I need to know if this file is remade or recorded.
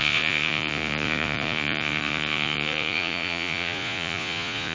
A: remade